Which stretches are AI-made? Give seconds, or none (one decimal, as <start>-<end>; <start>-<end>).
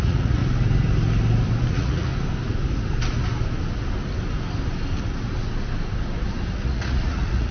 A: 0.0-0.4; 1.7-2.1; 6.5-7.5